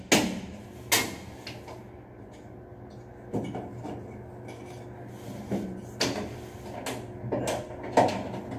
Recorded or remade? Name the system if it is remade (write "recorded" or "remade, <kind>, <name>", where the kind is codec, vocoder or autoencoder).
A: recorded